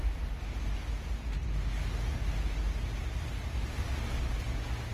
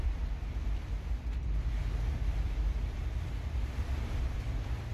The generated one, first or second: second